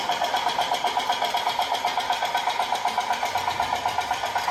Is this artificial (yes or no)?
yes